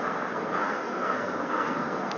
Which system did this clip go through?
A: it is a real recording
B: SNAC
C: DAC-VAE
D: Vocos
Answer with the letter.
B